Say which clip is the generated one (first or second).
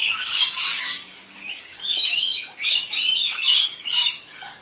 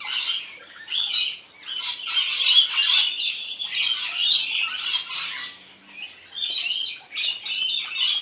first